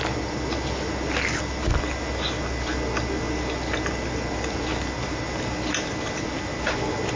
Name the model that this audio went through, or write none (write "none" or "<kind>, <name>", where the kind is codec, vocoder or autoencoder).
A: none